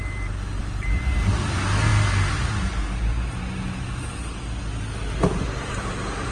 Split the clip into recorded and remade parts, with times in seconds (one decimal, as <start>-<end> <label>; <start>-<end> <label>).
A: 0.0-0.6 recorded; 0.6-1.3 remade; 1.3-6.3 recorded